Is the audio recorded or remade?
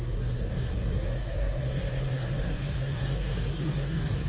remade